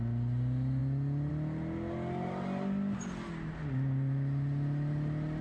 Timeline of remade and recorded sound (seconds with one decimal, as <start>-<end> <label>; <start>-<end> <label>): 0.0-5.4 recorded